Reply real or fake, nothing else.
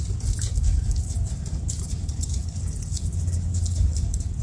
real